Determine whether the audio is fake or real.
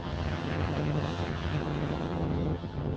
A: fake